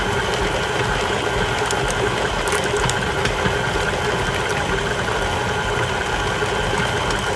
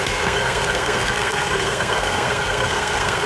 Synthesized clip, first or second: second